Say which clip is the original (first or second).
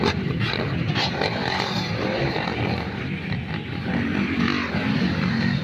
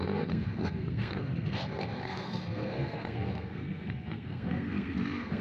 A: first